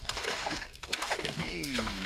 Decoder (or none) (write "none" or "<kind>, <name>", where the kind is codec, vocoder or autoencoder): codec, DAC